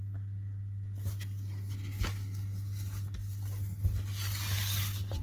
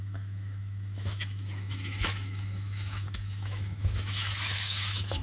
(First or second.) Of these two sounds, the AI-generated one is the second